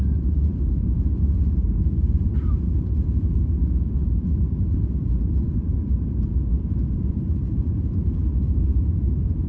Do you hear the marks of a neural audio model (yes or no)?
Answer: yes